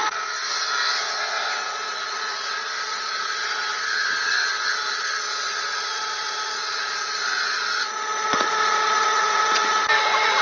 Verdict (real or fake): fake